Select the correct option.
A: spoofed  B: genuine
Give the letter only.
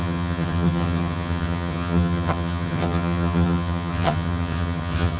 A